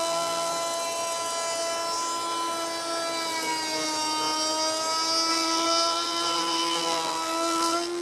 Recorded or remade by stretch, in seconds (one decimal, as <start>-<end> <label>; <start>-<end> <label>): 0.0-0.5 remade; 0.5-5.3 recorded; 5.3-8.0 remade